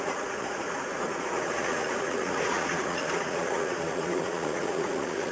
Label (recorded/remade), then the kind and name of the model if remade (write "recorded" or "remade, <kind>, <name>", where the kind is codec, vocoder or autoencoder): remade, vocoder, Vocos